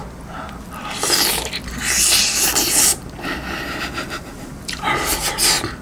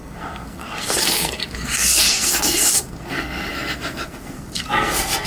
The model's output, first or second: second